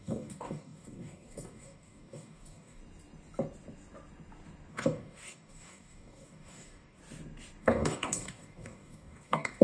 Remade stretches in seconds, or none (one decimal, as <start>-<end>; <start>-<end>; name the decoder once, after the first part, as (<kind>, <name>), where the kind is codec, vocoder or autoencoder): 0.0-2.8 (codec, DAC); 4.7-7.0; 7.6-9.6